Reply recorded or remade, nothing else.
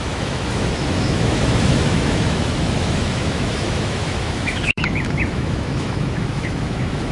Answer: remade